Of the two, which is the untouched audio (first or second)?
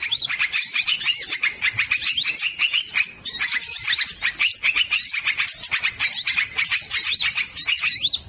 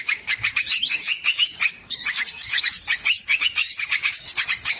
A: first